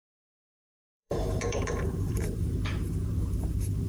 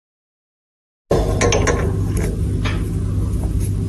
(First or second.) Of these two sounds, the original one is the second